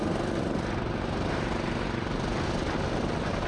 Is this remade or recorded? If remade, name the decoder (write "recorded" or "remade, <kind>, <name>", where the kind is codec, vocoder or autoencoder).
recorded